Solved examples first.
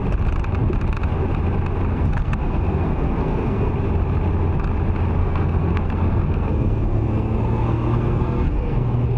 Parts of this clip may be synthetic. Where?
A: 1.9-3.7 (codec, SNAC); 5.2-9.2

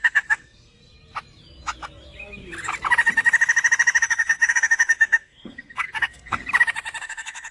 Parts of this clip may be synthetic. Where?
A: 0.0-0.8 (codec, SNAC); 4.0-6.4; 7.0-7.5

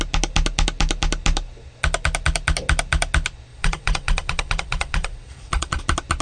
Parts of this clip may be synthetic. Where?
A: 3.5-5.8 (vocoder, Vocos)

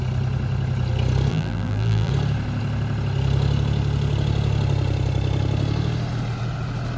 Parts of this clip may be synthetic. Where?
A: 1.3-2.1 (vocoder, BigVGAN v2)

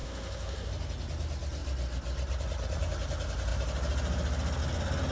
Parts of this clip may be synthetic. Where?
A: 0.0-0.7 (codec, SNAC)

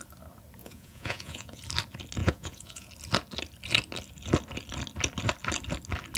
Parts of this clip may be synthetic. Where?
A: 0.6-1.6 (vocoder, Vocos); 2.2-2.9

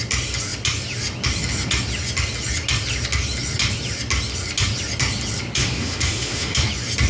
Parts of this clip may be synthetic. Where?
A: 5.6-6.6 (autoencoder, DAC-VAE)